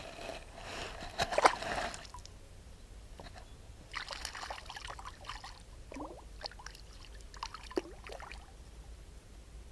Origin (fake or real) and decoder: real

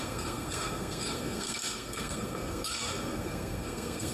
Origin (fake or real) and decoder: fake, codec, SNAC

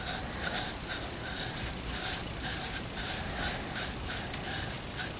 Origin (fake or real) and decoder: real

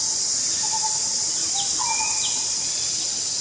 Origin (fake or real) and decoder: real